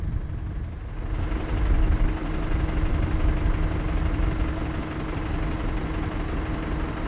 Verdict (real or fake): real